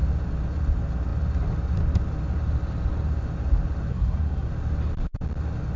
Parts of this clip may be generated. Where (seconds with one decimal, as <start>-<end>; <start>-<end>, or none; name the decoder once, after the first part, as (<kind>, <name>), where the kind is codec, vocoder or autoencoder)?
3.9-4.5 (codec, SNAC)